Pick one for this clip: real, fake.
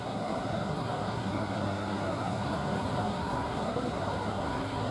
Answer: fake